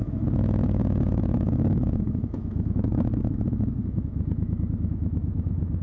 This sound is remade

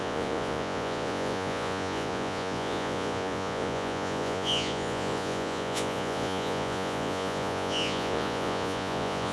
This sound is remade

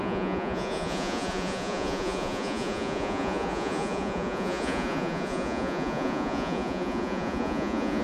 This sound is remade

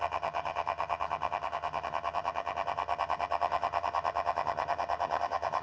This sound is remade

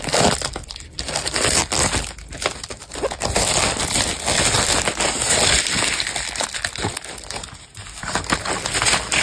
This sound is recorded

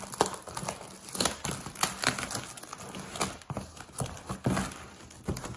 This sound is recorded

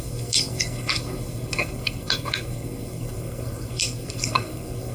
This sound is remade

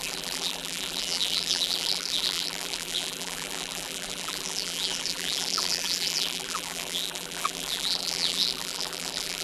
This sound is remade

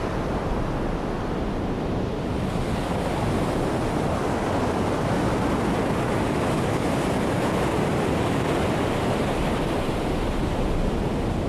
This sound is recorded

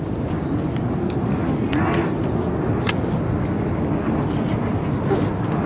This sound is recorded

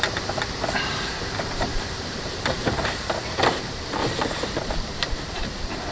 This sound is remade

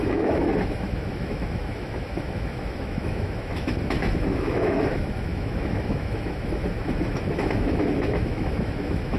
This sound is remade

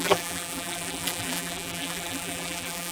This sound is remade